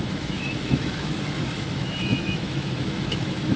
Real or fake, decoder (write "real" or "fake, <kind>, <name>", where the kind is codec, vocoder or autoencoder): fake, autoencoder, DAC-VAE